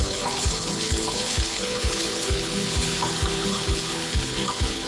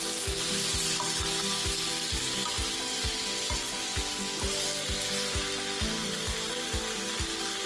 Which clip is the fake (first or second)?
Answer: first